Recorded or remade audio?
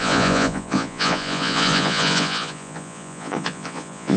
remade